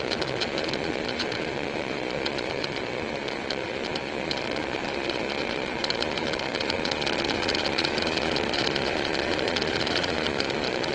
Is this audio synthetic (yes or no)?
yes